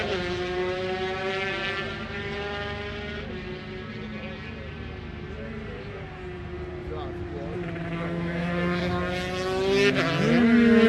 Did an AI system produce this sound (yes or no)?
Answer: no